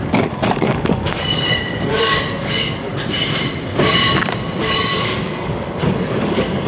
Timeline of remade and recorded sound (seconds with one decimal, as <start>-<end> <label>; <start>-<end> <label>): 0.0-2.9 remade; 2.9-4.6 recorded; 4.6-6.7 remade